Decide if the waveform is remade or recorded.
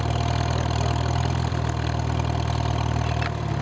recorded